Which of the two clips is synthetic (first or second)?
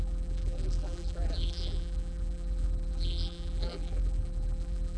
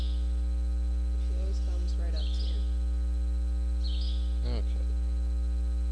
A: first